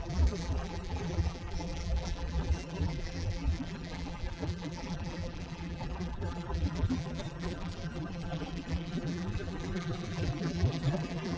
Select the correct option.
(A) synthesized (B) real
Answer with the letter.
A